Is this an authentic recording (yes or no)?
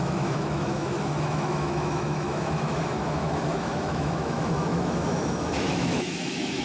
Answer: no